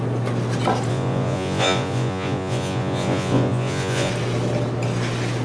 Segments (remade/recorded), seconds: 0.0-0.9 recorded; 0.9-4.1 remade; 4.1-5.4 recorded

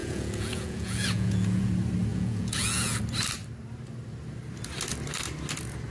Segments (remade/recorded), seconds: 0.0-1.7 remade; 1.7-2.1 recorded; 2.1-3.0 remade; 3.0-5.9 recorded

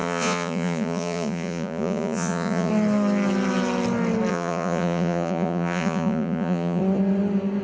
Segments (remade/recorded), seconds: 0.0-2.7 remade; 2.7-4.3 recorded; 4.3-6.8 remade; 6.8-7.6 recorded

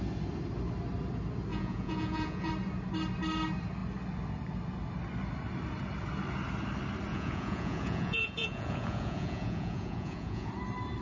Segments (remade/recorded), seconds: 0.0-1.5 recorded; 1.5-2.5 remade; 2.5-7.1 recorded; 7.1-10.5 remade; 10.5-11.0 recorded

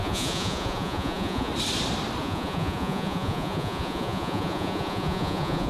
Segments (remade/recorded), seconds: 0.0-1.5 remade; 1.5-2.2 recorded; 2.2-5.7 remade

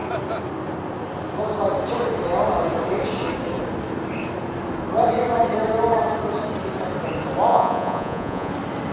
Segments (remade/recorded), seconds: 0.0-7.5 recorded; 7.5-8.5 remade; 8.5-8.9 recorded